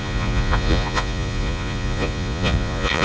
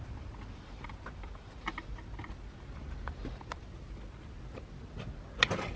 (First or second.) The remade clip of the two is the first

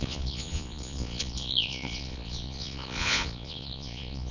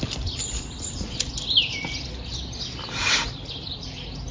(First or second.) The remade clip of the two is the first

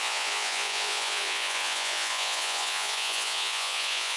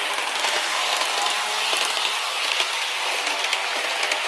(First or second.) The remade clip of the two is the first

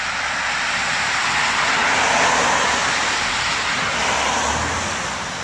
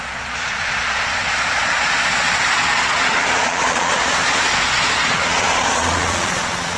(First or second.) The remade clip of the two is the second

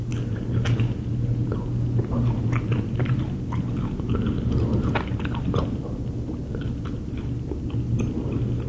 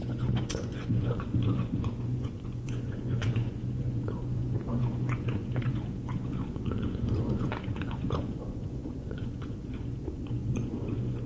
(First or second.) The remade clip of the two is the second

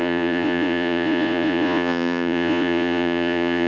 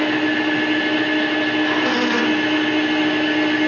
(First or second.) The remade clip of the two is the first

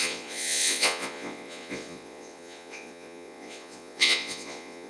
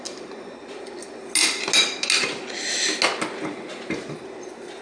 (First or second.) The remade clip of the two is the first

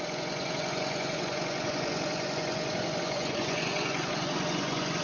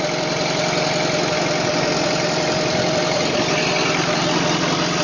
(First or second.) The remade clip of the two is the first